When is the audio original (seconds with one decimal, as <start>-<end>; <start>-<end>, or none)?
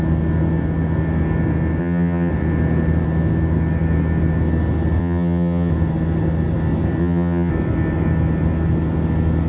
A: 0.0-1.8; 2.3-5.0; 5.7-7.0; 7.5-9.5